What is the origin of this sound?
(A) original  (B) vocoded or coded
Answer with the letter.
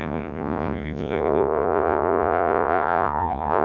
B